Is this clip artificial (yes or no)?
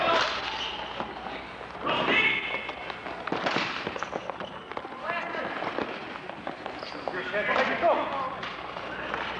no